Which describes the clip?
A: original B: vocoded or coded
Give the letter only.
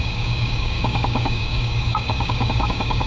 B